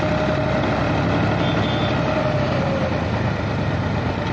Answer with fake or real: real